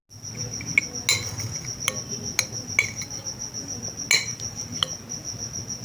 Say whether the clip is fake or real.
real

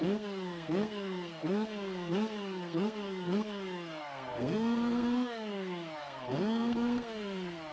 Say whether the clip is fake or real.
fake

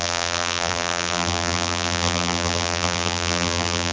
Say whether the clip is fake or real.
fake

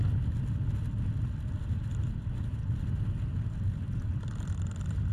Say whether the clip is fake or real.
real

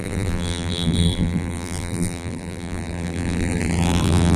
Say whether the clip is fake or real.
fake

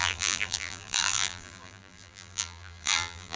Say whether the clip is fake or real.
fake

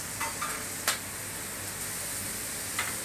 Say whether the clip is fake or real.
real